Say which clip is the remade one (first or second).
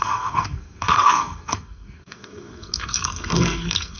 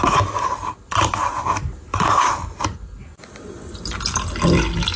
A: first